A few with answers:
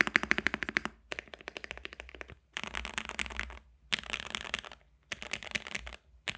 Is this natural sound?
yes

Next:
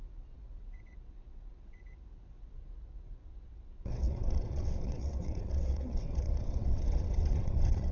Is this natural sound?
no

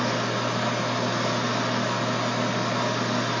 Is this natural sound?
yes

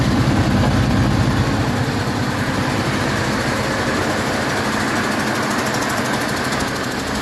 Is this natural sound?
yes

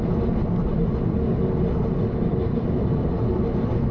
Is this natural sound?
yes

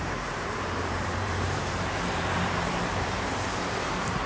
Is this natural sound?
no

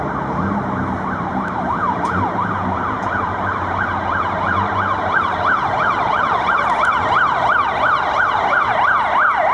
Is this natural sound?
yes